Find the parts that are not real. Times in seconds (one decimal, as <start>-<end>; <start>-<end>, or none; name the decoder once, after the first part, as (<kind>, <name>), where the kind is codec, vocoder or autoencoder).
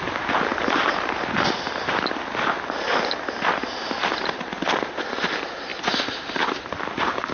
none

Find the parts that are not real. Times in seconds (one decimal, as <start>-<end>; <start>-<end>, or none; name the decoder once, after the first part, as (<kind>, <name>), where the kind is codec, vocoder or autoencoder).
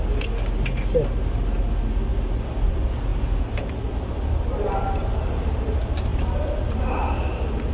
none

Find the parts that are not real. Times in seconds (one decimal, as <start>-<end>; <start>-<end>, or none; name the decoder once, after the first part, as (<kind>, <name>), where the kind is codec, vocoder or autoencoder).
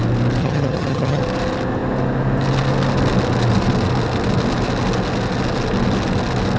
0.4-1.2 (vocoder, HiFi-GAN)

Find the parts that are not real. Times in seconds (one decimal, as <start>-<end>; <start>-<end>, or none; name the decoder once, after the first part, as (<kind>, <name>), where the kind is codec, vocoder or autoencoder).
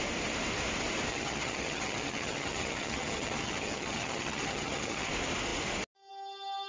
1.1-5.1 (vocoder, HiFi-GAN)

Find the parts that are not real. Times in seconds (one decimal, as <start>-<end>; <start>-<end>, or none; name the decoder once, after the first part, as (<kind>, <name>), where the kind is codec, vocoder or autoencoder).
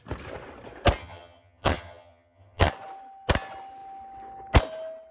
1.0-2.7 (vocoder, HiFi-GAN)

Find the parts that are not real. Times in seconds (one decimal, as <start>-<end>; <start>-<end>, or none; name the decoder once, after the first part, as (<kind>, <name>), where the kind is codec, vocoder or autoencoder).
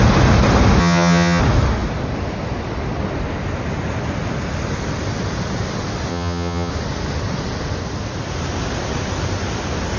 0.8-1.4 (vocoder, HiFi-GAN); 6.1-6.7